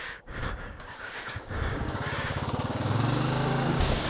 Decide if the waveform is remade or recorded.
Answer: remade